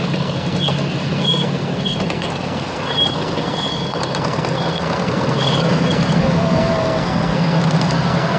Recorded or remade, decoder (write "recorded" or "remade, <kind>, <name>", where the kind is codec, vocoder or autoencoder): remade, codec, SNAC